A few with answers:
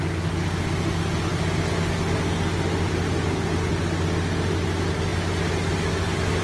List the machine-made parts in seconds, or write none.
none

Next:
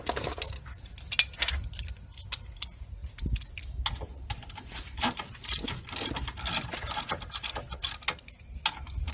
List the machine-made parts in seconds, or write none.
none

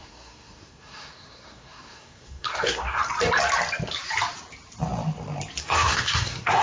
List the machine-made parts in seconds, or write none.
0.0-3.0 (codec, SNAC); 5.6-6.6

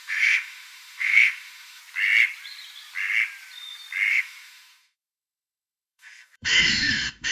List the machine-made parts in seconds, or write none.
0.0-1.8 (autoencoder, DAC-VAE); 4.1-7.3

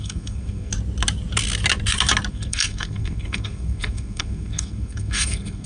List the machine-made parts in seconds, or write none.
0.0-0.7 (codec, SNAC); 2.3-5.7